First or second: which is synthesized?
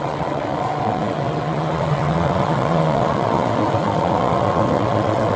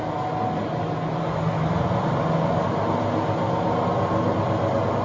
first